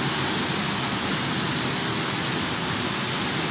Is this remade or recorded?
recorded